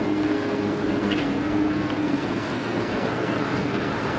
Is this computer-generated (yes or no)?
yes